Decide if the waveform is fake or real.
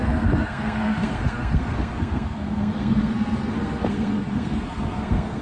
fake